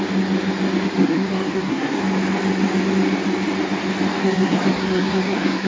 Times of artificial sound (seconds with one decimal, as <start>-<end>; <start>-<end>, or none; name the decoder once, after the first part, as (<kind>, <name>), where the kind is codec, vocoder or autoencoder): 1.0-2.0 (codec, SNAC); 4.2-5.7